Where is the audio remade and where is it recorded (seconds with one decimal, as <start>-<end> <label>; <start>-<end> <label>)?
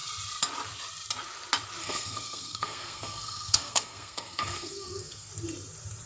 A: 0.0-1.8 recorded; 1.8-5.3 remade; 5.3-6.1 recorded